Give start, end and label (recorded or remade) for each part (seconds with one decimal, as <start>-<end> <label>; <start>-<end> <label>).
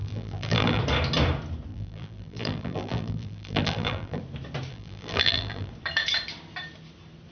0.0-0.8 remade; 0.8-1.7 recorded; 1.7-4.2 remade; 4.2-4.7 recorded; 4.7-5.7 remade; 5.7-7.3 recorded